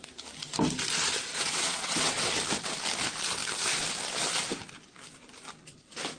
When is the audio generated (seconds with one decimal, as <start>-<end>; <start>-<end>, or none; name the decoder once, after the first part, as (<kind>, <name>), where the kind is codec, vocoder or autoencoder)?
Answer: 1.3-2.3 (vocoder, WaveNeXt)